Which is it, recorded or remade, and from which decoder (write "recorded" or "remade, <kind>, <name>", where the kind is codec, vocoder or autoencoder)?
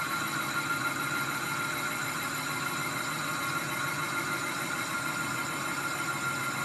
recorded